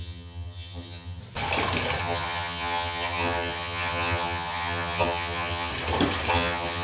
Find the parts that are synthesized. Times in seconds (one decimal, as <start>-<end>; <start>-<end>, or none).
0.0-1.2; 2.0-5.7; 6.3-6.8